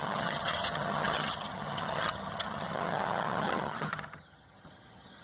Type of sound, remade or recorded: remade